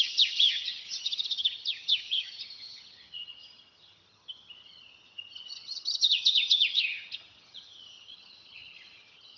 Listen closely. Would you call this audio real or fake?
fake